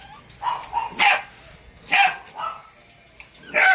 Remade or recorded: recorded